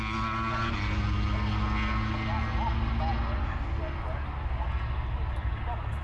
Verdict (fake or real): real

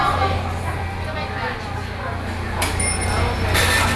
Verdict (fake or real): real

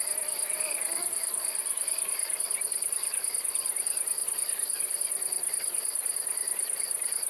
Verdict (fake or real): real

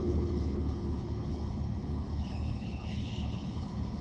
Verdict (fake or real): fake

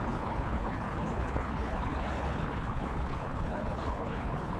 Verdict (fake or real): fake